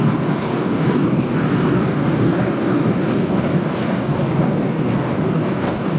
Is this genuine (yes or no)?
no